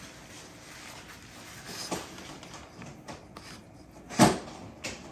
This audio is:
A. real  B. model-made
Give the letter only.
A